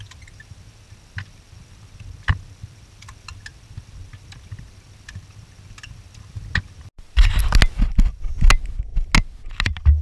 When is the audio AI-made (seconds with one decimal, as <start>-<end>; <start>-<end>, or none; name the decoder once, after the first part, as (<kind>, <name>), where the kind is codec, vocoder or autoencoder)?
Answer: none